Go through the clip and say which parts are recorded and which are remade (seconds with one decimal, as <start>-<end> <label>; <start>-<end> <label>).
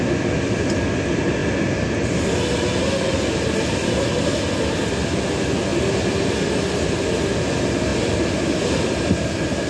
0.0-9.7 recorded